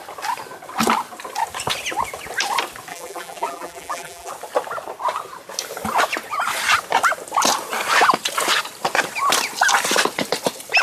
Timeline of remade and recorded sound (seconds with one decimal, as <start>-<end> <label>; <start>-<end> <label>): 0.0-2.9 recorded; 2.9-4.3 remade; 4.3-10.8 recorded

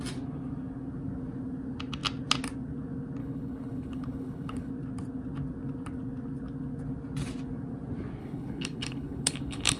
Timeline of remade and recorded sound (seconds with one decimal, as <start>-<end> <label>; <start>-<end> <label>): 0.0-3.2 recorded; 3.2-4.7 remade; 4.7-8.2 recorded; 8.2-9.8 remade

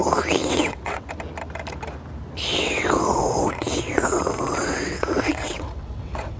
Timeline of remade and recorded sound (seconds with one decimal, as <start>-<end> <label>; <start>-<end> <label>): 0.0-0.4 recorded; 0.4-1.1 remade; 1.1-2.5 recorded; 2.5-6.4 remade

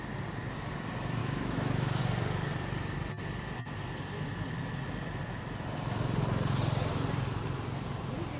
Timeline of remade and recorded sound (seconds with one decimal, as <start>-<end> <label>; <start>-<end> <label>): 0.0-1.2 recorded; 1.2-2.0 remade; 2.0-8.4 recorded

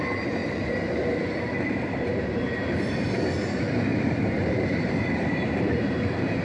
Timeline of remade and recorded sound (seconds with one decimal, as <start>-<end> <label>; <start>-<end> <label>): 0.0-0.4 recorded; 0.4-3.1 remade; 3.1-3.9 recorded; 3.9-6.4 remade

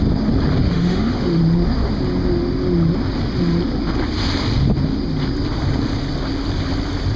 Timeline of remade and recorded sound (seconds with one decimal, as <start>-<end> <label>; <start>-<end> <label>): 0.0-0.6 recorded; 0.6-1.4 remade; 1.4-7.2 recorded